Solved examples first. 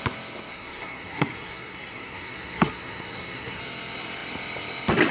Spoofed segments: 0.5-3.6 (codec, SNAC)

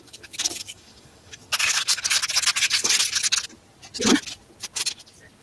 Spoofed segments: 0.0-2.2 (codec, DAC)

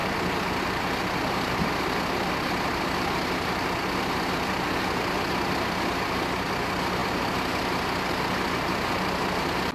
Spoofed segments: none